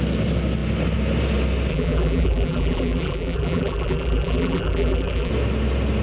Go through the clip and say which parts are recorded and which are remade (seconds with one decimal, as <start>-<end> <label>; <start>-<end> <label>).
0.0-1.7 recorded; 1.7-5.3 remade; 5.3-6.0 recorded